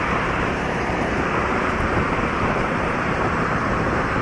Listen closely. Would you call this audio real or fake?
fake